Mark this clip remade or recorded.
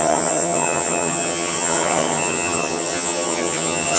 remade